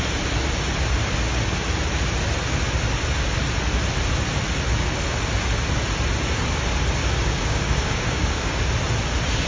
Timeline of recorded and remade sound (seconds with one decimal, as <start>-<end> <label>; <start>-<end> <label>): 0.0-7.0 recorded; 7.0-8.6 remade; 8.6-9.5 recorded